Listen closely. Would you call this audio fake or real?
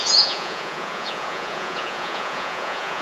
fake